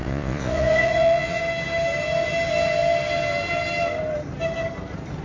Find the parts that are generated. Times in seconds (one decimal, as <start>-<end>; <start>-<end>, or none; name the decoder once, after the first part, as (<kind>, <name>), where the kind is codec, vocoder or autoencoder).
0.0-1.4 (vocoder, Vocos)